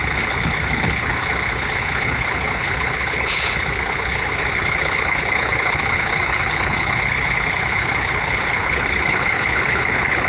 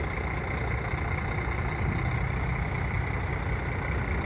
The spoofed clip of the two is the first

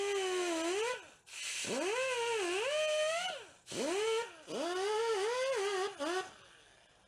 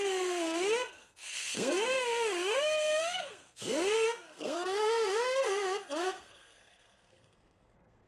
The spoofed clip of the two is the second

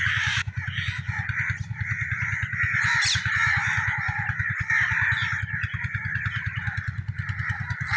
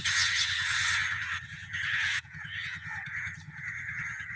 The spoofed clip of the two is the second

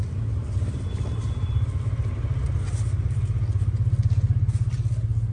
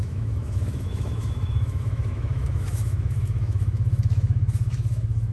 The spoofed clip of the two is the second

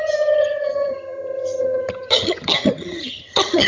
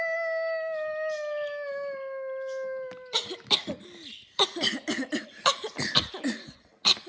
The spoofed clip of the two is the first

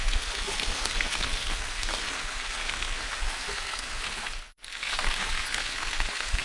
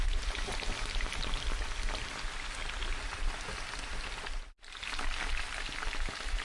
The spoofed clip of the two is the first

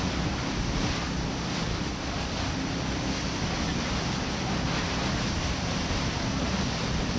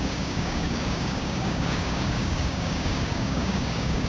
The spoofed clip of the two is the second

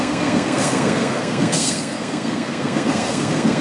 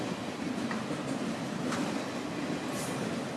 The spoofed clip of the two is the first